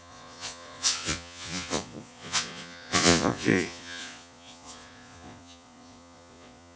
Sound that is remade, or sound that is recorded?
remade